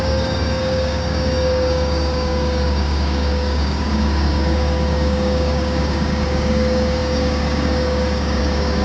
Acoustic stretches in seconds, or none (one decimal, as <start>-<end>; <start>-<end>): none